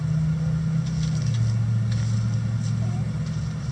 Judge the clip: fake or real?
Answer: real